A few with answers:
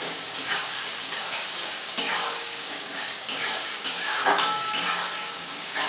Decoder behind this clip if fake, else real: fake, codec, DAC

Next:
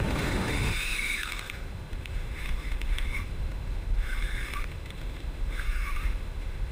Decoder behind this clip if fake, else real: fake, autoencoder, DAC-VAE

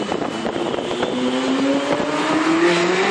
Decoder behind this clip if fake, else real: real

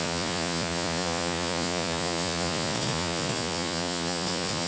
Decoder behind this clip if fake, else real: fake, vocoder, Vocos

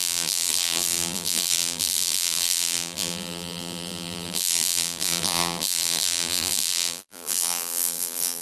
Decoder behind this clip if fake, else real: fake, vocoder, BigVGAN v2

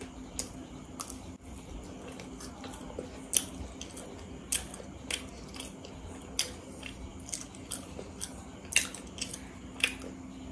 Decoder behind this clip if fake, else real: real